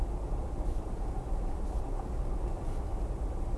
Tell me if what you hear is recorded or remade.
recorded